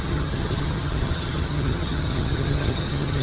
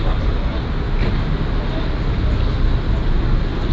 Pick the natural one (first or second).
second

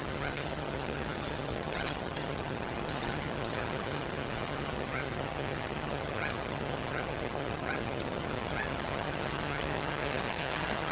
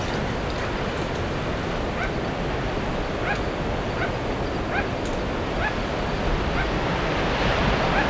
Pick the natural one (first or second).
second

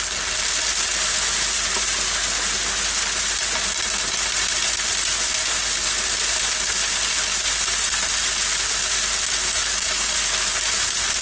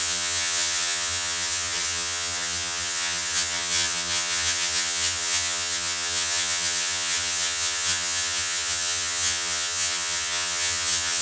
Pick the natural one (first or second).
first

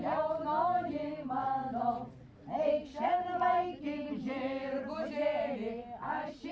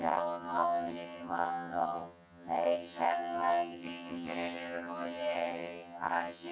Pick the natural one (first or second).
first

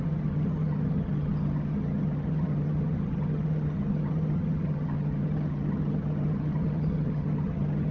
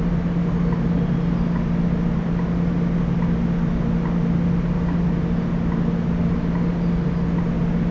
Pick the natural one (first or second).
second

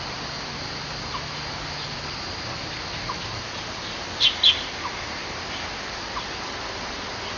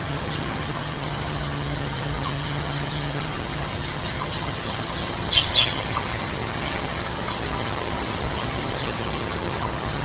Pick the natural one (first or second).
first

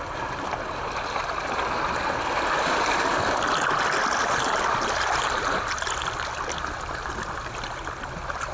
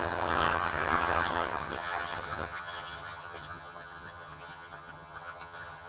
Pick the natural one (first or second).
first